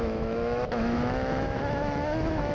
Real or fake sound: fake